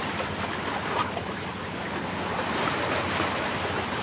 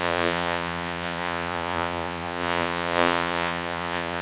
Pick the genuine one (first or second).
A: first